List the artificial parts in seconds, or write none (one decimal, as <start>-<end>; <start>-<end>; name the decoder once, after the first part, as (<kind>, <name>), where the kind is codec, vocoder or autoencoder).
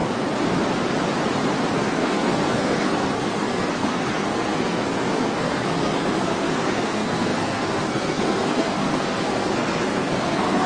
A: 1.7-10.7 (codec, SNAC)